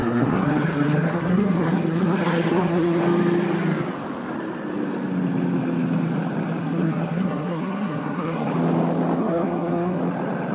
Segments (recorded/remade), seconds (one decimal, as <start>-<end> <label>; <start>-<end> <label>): 0.0-3.0 remade; 3.0-6.6 recorded; 6.6-8.5 remade; 8.5-9.2 recorded; 9.2-10.0 remade; 10.0-10.5 recorded